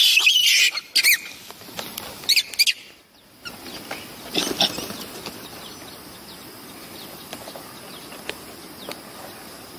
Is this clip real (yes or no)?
yes